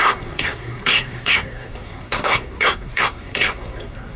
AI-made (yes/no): yes